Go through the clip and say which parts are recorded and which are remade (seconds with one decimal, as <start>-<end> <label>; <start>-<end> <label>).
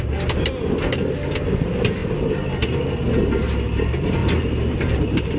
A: 0.0-4.2 recorded; 4.2-5.4 remade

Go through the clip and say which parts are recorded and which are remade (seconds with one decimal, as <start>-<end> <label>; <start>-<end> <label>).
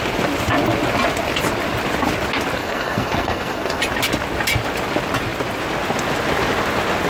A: 0.0-2.6 recorded; 2.6-3.8 remade; 3.8-7.1 recorded